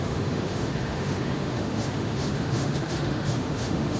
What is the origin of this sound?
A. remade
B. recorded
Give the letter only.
A